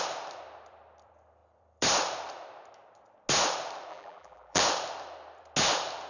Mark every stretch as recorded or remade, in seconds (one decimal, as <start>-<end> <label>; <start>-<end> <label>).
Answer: 0.0-3.9 recorded; 3.9-4.6 remade; 4.6-6.1 recorded